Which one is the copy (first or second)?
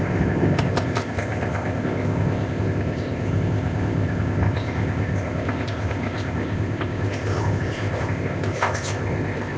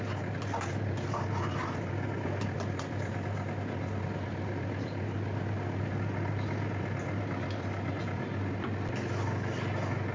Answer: first